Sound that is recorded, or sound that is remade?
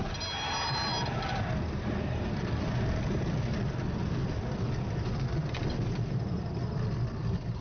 recorded